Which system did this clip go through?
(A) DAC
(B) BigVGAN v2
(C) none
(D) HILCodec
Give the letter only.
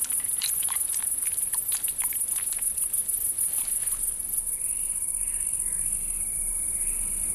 C